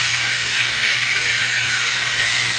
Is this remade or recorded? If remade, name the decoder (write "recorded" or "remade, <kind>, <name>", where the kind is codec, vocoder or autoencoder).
remade, codec, DAC